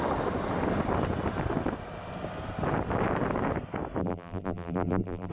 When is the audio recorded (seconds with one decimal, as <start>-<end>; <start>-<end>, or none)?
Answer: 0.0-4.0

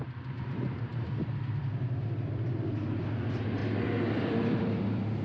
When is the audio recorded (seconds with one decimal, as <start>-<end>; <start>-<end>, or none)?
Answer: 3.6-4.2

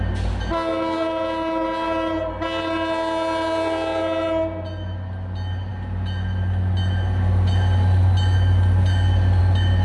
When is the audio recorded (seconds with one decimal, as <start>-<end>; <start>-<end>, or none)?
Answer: 0.0-9.8

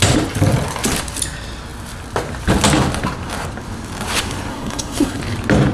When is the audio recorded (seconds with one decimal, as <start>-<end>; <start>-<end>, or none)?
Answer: 0.0-4.5; 5.2-5.7

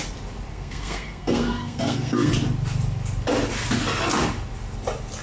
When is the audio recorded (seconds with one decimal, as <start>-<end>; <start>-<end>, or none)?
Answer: 0.0-0.5; 2.3-5.2